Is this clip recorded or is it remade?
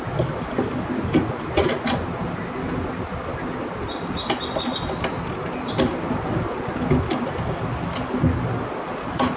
recorded